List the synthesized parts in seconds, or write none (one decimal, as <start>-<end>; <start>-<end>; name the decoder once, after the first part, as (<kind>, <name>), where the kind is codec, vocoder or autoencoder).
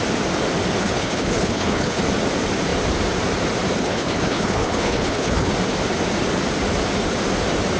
0.8-2.0 (codec, HILCodec); 3.8-5.5